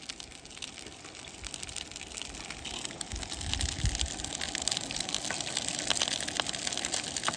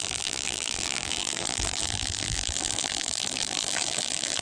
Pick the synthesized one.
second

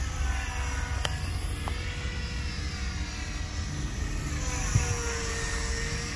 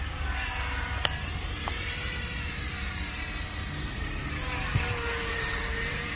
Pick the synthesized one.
second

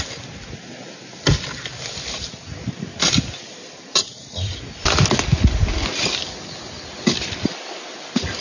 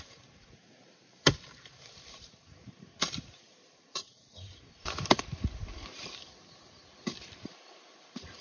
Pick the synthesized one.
second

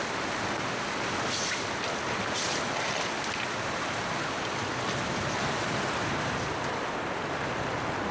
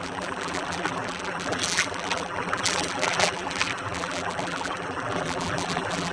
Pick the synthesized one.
second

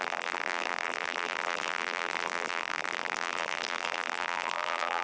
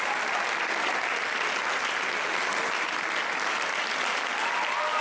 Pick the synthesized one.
first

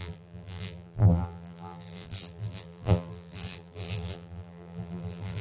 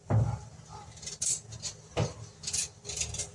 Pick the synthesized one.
first